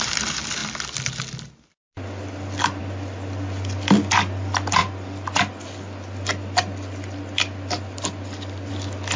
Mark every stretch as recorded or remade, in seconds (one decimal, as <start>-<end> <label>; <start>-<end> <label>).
0.0-9.2 recorded